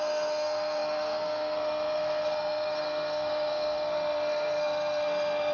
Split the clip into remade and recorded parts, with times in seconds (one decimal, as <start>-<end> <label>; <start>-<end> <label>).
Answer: 0.0-5.5 remade